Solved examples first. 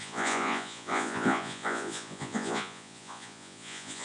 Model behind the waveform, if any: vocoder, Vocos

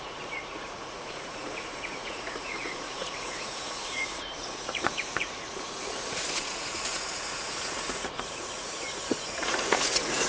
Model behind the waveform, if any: vocoder, Vocos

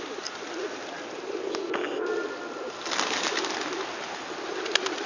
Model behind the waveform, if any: none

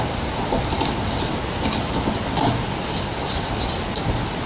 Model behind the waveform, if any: none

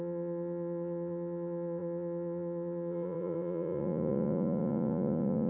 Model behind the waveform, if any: vocoder, Vocos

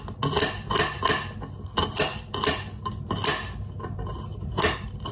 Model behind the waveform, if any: none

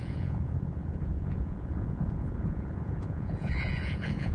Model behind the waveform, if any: vocoder, Vocos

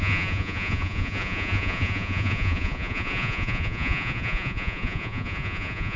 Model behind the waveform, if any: vocoder, Vocos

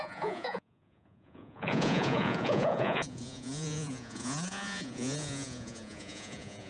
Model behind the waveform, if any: vocoder, Vocos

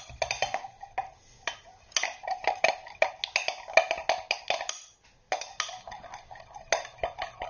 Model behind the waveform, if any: none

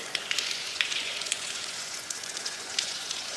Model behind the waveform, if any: vocoder, Vocos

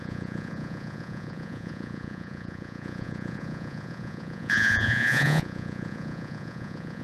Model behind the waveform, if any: vocoder, Vocos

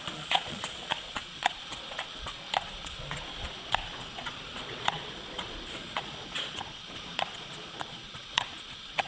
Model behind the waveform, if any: vocoder, Vocos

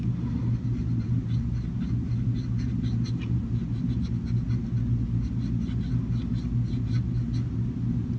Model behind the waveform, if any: none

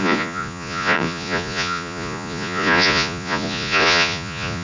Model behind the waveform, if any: vocoder, Vocos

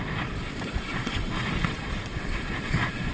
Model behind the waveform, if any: vocoder, Vocos